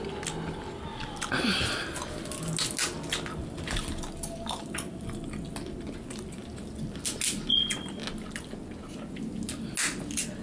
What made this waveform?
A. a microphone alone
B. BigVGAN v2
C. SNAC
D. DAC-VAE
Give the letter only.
A